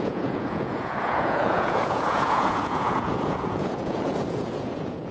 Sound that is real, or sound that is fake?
fake